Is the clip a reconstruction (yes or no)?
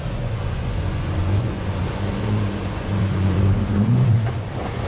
yes